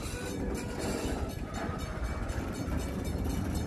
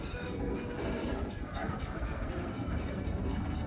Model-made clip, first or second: second